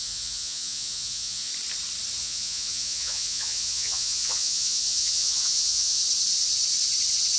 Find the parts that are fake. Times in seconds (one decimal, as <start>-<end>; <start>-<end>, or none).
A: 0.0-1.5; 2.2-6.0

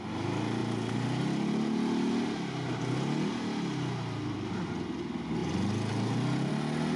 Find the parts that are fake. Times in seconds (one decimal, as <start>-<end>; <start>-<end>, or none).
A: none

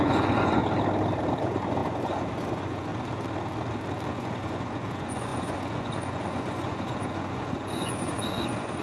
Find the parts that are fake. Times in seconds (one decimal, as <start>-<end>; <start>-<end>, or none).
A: 0.0-0.6; 1.4-2.9; 4.1-8.8

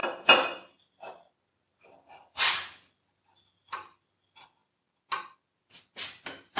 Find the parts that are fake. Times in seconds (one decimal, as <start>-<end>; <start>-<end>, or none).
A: none

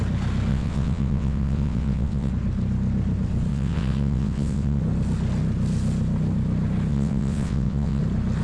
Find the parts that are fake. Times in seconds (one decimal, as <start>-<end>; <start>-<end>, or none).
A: 0.5-2.3; 3.5-4.8; 6.9-8.0

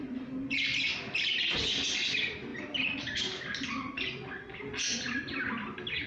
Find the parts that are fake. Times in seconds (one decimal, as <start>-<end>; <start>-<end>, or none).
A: none